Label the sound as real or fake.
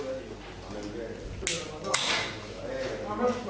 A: real